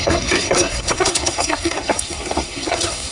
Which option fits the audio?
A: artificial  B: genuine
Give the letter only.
A